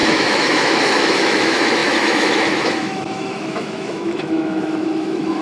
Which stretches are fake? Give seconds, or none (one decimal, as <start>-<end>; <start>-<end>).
0.0-5.4

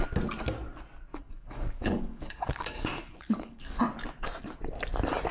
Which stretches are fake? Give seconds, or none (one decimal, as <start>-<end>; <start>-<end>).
1.1-3.8

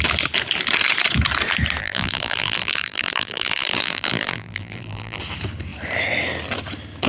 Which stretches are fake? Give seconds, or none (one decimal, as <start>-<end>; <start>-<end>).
1.8-5.2

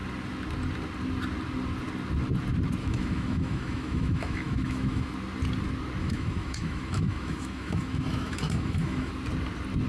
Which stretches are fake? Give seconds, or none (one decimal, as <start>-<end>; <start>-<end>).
2.8-5.1; 6.0-9.1

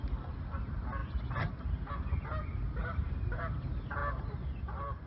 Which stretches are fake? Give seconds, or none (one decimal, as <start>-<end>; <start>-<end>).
2.8-3.6; 4.0-5.1

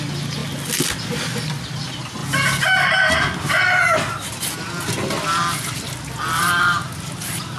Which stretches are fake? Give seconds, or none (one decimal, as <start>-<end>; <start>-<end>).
none

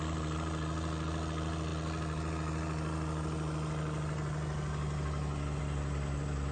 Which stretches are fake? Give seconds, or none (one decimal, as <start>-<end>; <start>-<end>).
none